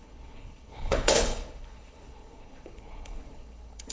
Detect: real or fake fake